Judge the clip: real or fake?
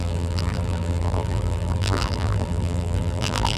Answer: fake